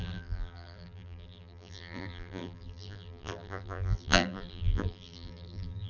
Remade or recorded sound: remade